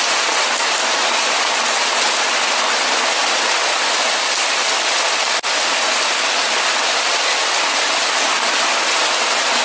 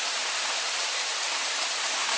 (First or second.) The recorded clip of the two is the first